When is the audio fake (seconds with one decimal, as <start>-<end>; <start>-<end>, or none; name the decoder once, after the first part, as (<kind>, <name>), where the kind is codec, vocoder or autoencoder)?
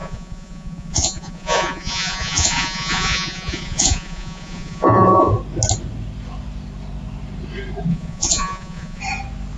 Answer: 0.0-5.3 (vocoder, Vocos); 7.9-9.0